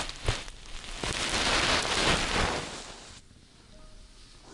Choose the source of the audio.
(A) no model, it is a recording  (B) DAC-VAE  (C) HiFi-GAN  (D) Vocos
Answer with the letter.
A